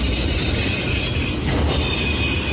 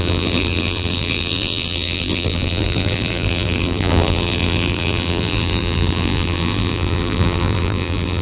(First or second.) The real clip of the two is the first